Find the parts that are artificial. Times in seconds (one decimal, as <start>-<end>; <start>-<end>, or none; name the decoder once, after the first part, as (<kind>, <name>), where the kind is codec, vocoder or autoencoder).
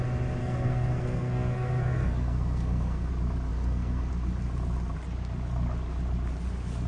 0.4-3.1 (codec, SNAC); 3.5-4.1